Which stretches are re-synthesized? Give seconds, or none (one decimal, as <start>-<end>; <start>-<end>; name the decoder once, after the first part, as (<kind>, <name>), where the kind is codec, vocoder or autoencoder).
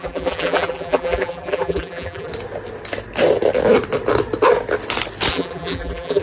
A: 0.0-2.3 (vocoder, BigVGAN v2); 5.3-6.2